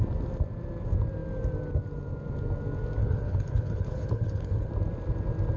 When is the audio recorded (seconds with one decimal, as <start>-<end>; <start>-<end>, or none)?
0.0-3.0; 4.7-5.6